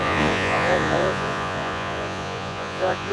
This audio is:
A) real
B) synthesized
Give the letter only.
B